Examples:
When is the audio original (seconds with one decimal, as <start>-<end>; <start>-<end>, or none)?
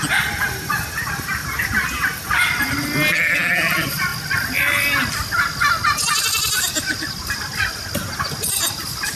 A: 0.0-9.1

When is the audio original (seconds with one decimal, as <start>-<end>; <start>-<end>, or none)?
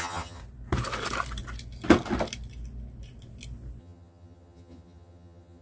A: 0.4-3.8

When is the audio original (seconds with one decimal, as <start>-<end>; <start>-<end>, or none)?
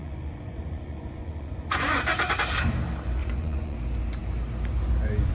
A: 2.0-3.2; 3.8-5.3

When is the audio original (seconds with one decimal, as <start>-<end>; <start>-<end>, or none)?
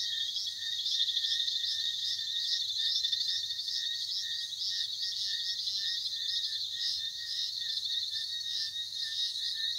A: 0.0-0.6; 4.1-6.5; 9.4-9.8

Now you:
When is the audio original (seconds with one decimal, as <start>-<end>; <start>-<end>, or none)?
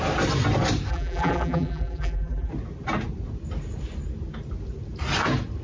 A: 0.0-0.9; 2.5-5.6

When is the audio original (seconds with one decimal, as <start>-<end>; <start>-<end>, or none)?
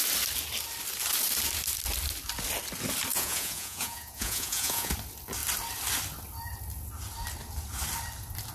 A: 0.0-3.1; 4.9-8.5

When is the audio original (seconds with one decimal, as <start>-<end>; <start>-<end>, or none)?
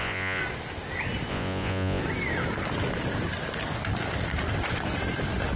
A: 0.4-1.3; 2.0-5.6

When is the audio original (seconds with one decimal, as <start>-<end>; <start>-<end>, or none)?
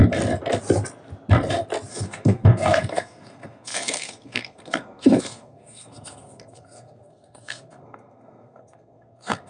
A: 0.0-1.9